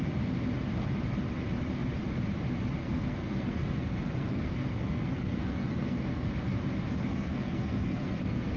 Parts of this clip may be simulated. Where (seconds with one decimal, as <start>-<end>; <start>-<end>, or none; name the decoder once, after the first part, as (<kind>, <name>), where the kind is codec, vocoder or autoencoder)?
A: 2.8-6.3 (codec, SNAC); 7.1-8.6